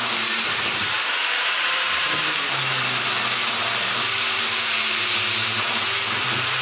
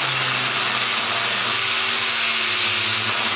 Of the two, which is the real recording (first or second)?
second